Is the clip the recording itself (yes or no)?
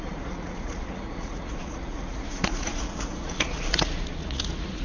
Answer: no